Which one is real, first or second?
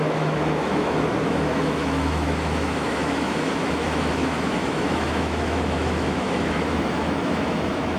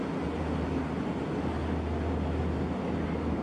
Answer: second